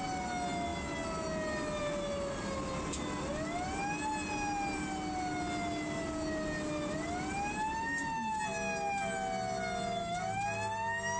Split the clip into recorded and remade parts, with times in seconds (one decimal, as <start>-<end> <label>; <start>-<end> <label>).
0.0-11.2 recorded